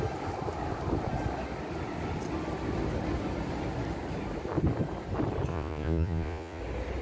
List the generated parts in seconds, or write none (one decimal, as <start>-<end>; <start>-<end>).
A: 5.5-6.6